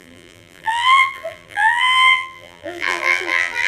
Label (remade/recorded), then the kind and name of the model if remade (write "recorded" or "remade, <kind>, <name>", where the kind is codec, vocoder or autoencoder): remade, vocoder, BigVGAN v2